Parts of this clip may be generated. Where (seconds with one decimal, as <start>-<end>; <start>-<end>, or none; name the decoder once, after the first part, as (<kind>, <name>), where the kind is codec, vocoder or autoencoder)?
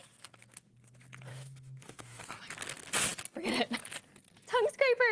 1.3-2.2 (autoencoder, DAC-VAE)